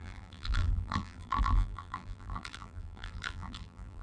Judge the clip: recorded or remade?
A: remade